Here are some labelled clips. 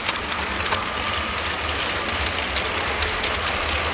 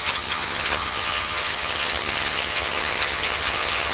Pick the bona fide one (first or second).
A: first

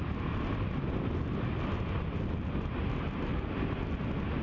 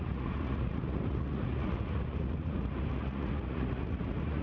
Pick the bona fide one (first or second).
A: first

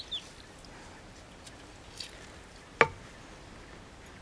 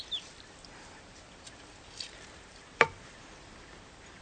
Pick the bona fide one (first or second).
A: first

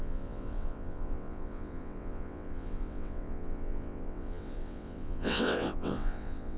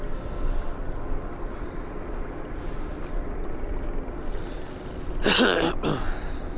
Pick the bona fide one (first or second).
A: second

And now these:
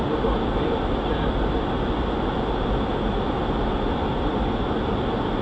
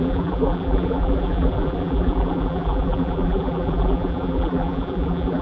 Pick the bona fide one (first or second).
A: first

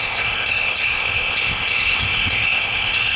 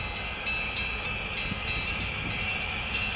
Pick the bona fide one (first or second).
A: second